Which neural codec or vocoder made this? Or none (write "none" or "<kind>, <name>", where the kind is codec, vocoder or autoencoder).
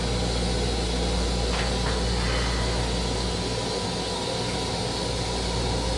none